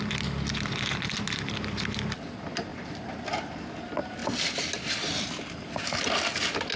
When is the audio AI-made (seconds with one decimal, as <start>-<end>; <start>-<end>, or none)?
2.7-3.8